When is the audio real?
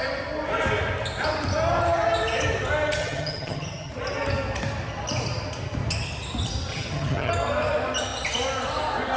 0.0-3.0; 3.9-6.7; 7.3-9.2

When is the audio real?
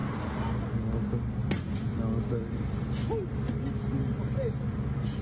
0.6-1.4; 2.9-5.2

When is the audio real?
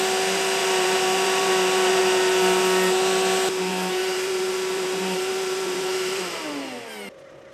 0.0-0.6; 2.0-3.7; 6.2-7.5